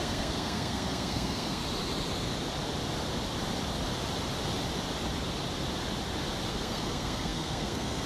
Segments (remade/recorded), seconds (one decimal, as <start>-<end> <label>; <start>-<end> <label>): 0.0-1.6 remade; 1.6-6.5 recorded; 6.5-8.1 remade